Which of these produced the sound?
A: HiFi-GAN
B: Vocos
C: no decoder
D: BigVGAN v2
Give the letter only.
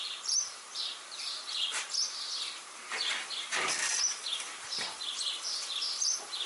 D